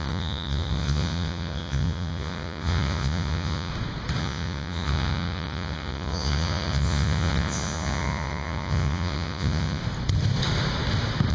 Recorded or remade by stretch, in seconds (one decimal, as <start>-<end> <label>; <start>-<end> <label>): 0.0-3.7 remade; 3.7-4.2 recorded; 4.2-9.8 remade; 9.8-11.3 recorded